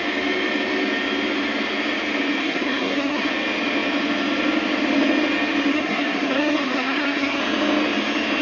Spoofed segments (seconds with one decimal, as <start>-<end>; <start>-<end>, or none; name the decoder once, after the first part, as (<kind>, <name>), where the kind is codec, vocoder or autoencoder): 2.4-3.3 (codec, SNAC); 5.7-7.4

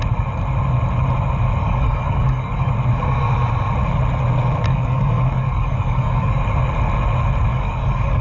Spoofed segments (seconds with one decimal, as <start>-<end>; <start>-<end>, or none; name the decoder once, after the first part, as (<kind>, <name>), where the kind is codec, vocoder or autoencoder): 1.6-2.7 (codec, DAC); 4.7-6.4; 7.5-8.2

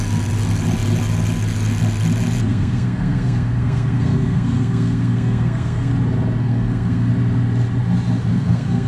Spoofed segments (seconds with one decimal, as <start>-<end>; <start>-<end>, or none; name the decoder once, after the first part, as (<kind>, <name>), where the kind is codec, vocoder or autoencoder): 2.5-5.9 (codec, SNAC); 6.4-7.1; 8.3-8.9

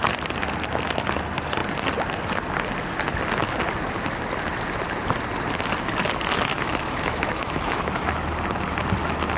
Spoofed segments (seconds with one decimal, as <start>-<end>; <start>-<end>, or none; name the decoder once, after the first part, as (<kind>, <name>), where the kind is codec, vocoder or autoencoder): 6.5-8.1 (autoencoder, DAC-VAE)